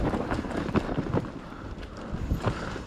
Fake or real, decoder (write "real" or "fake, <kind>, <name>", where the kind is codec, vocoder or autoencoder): fake, vocoder, BigVGAN v2